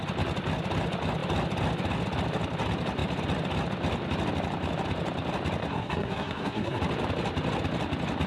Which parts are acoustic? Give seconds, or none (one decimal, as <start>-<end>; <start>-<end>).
0.0-5.6; 6.8-8.3